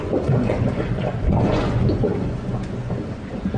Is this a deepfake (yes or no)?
yes